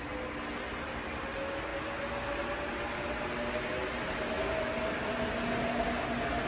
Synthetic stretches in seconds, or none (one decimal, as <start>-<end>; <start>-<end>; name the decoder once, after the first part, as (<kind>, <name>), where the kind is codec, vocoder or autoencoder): none